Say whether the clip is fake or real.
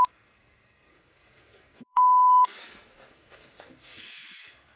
fake